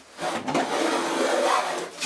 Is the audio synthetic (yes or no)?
no